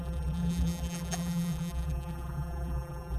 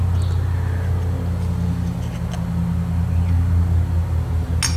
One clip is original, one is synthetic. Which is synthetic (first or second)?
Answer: first